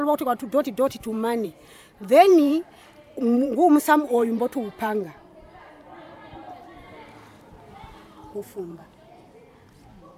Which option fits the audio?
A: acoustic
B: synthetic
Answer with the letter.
B